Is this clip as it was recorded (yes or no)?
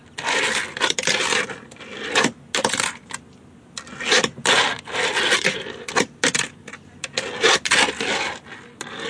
yes